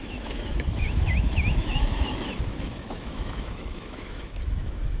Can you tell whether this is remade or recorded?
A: remade